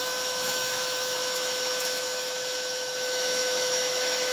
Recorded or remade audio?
remade